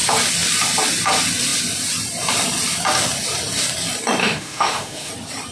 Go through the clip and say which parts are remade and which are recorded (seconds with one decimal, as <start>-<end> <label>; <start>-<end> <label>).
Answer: 0.0-4.2 recorded; 4.2-5.1 remade; 5.1-5.5 recorded